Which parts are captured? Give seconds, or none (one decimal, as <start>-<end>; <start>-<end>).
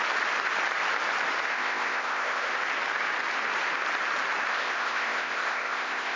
0.0-1.5; 2.5-4.5